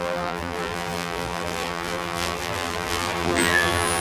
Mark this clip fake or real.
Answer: fake